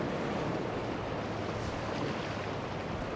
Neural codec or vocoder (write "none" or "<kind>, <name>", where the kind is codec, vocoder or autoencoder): vocoder, BigVGAN v2